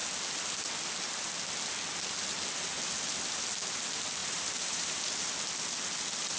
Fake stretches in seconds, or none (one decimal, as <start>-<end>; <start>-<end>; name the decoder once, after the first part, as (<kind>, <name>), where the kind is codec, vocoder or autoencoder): 4.2-5.1 (vocoder, BigVGAN v2)